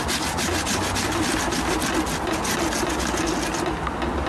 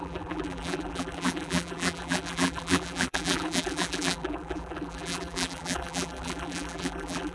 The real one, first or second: first